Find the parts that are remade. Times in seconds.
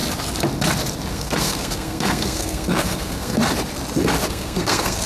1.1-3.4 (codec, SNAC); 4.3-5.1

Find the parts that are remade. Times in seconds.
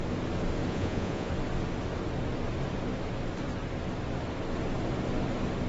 0.7-1.3 (vocoder, Vocos)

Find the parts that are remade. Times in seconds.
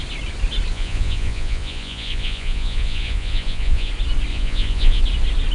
0.7-3.9 (vocoder, Vocos); 4.3-5.0